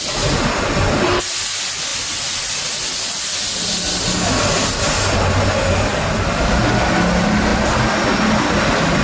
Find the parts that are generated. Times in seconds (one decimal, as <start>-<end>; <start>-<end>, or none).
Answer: 5.9-6.6